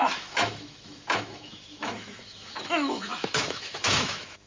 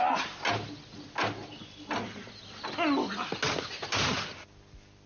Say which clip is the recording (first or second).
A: second